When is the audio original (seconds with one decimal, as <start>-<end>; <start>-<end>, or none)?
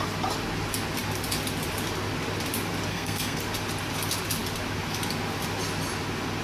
0.0-2.9; 3.4-6.4